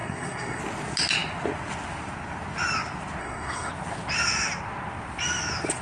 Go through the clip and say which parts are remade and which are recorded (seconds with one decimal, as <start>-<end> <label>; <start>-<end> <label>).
0.0-0.6 remade; 0.6-3.2 recorded; 3.2-3.7 remade; 3.7-5.8 recorded